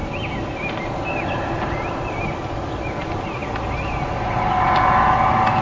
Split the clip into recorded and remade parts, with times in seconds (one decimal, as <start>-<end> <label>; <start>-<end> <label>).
0.0-5.6 recorded